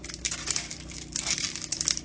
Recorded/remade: recorded